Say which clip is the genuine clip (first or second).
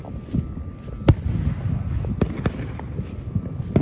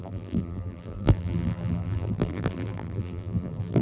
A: first